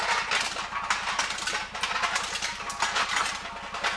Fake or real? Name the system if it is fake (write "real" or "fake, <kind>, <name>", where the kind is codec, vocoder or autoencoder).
real